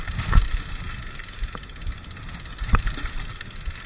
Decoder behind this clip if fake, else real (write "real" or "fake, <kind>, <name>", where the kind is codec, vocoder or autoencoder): real